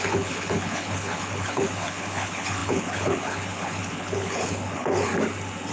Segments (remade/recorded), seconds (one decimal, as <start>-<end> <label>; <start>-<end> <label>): 0.0-5.1 remade; 5.1-5.7 recorded